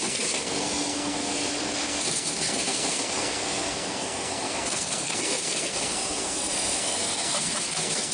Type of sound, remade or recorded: remade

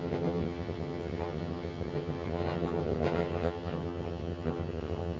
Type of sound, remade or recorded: remade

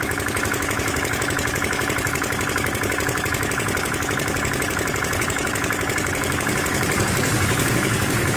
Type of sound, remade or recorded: remade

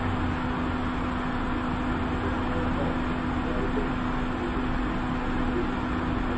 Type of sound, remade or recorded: recorded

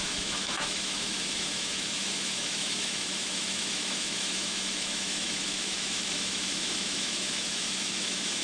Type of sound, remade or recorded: remade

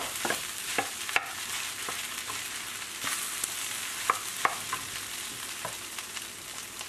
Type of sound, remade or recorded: recorded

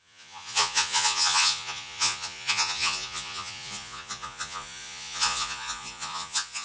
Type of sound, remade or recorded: remade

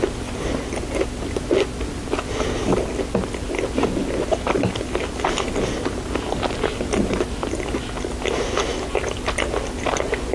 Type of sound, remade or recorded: recorded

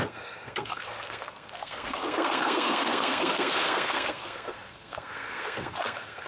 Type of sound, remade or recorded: remade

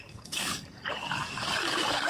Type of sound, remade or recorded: remade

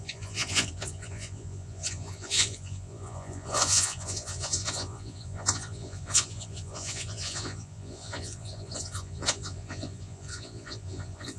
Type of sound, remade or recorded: remade